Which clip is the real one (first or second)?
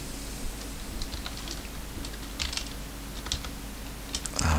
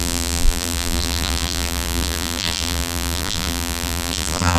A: first